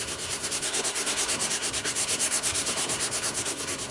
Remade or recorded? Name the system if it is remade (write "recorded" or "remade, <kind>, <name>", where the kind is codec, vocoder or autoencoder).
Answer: remade, codec, SNAC